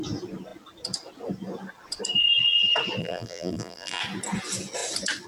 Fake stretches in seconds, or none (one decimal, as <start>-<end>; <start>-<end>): 3.0-4.0